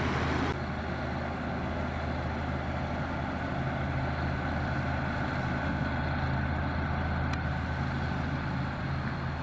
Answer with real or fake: real